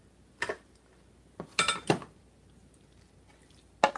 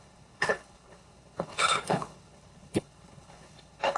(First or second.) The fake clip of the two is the second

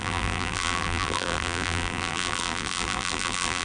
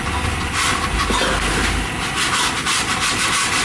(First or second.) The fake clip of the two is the first